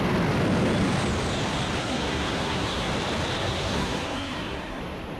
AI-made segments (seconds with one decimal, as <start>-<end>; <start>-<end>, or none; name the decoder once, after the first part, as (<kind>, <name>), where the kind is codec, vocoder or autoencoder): 1.8-2.9 (codec, SNAC); 3.4-4.8